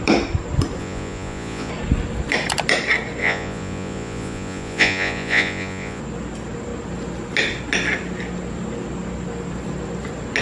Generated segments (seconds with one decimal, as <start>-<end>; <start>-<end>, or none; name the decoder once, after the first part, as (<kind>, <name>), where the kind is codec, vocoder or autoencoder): 0.8-1.7 (vocoder, Vocos); 3.2-6.0